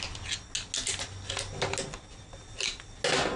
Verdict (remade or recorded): recorded